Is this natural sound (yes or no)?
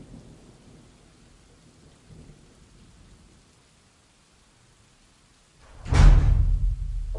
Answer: yes